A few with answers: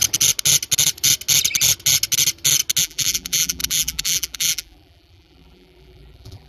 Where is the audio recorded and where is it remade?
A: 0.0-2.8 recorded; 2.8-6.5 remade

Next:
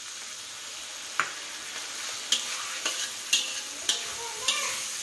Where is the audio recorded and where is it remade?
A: 0.0-5.0 recorded

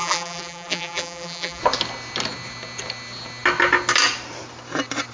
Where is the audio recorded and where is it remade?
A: 0.0-1.6 remade; 1.6-5.1 recorded

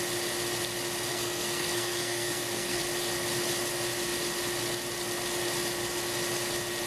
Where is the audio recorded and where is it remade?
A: 0.0-1.1 recorded; 1.1-2.8 remade; 2.8-6.9 recorded